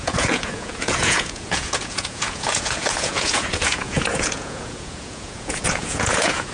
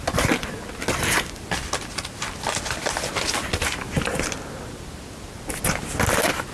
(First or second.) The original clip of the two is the second